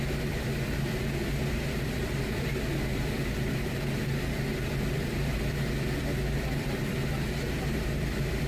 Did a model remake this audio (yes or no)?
yes